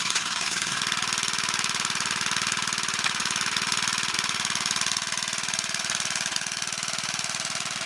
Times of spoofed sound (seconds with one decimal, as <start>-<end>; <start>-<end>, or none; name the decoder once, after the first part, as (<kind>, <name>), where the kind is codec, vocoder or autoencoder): 0.0-0.8 (codec, SNAC)